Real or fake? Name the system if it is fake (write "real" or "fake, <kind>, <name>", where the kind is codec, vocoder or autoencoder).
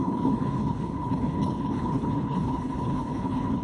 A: fake, codec, HILCodec